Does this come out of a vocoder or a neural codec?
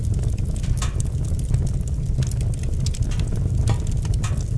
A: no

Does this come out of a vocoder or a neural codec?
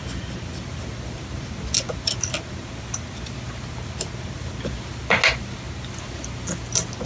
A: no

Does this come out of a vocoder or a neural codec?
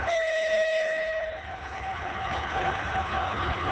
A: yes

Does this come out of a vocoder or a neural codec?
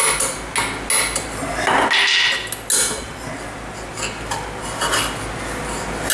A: no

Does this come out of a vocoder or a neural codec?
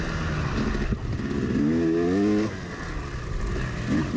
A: no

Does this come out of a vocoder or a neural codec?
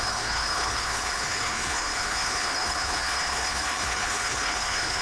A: yes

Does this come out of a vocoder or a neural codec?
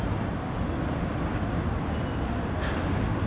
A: no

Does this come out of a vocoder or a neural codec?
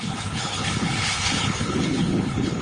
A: yes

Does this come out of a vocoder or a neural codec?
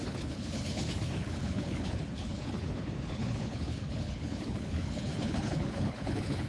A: yes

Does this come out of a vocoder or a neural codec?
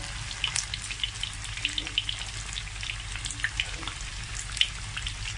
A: no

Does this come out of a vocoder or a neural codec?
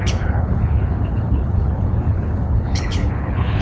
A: yes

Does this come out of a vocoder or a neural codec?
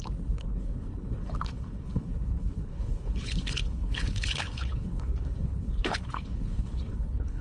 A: yes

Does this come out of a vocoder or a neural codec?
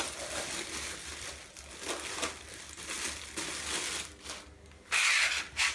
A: no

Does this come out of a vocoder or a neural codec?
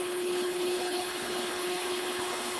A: yes